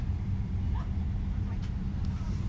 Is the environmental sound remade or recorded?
recorded